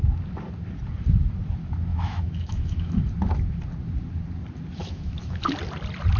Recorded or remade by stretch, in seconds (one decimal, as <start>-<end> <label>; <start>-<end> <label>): 0.0-1.9 recorded; 1.9-3.0 remade; 3.0-4.8 recorded; 4.8-5.5 remade; 5.5-6.2 recorded